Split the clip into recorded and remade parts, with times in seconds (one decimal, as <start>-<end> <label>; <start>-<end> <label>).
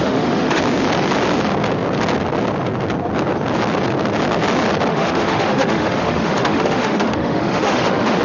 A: 0.0-0.6 remade; 0.6-4.9 recorded; 4.9-8.2 remade